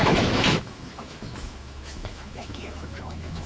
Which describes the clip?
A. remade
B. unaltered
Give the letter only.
A